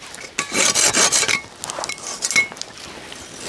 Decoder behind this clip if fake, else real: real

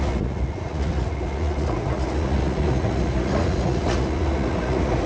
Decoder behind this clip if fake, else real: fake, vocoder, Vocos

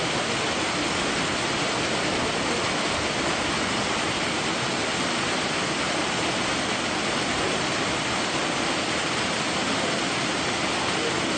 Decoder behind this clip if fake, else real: real